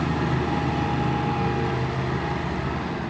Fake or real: real